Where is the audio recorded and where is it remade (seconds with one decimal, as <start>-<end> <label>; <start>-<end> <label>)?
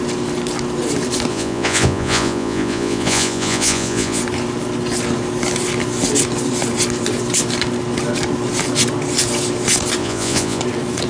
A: 0.0-1.3 recorded; 1.3-4.2 remade; 4.2-10.0 recorded; 10.0-10.6 remade; 10.6-11.1 recorded